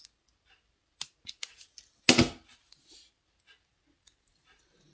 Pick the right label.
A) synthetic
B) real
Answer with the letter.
B